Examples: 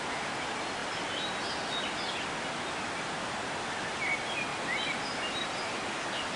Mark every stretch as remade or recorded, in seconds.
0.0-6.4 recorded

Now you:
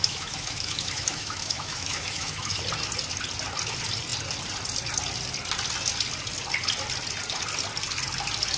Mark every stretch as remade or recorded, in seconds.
0.0-2.6 remade; 2.6-8.6 recorded